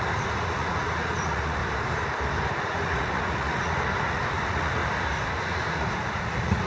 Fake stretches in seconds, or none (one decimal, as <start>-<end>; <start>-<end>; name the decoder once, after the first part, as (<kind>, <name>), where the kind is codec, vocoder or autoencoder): 0.0-1.6 (vocoder, Vocos); 2.6-4.8; 5.4-6.7